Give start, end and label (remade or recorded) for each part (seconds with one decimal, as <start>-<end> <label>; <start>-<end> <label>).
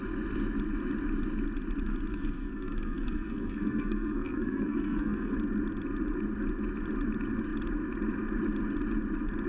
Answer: 0.0-2.1 recorded; 2.1-5.3 remade; 5.3-9.5 recorded